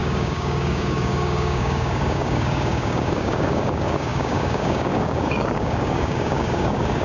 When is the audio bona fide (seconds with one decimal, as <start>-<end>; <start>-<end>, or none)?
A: none

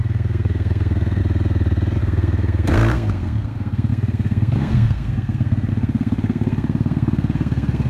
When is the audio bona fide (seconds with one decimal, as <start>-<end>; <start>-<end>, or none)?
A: 1.2-2.0

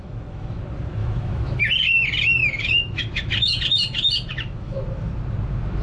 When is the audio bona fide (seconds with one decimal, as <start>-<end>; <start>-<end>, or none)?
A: 0.6-1.0; 1.6-2.4; 3.3-4.3; 5.1-5.8

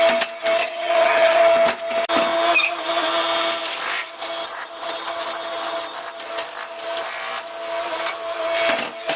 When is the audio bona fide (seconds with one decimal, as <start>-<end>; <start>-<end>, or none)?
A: 0.0-0.6; 1.4-9.2